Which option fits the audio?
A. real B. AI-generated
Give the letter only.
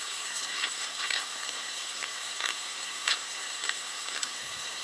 B